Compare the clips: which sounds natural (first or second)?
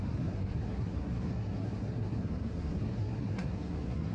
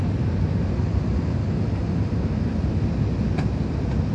second